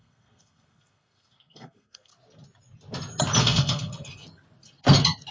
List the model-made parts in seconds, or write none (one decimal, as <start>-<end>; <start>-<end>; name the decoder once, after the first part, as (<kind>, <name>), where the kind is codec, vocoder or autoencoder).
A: 0.0-2.1 (codec, SNAC); 3.4-3.9